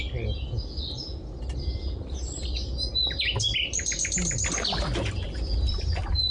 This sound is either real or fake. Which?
real